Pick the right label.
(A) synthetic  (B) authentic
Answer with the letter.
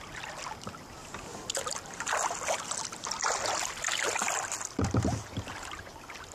B